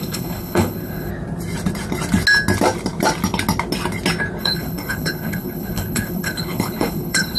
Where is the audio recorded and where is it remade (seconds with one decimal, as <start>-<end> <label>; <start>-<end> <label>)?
0.0-1.1 remade; 1.1-4.4 recorded; 4.4-7.4 remade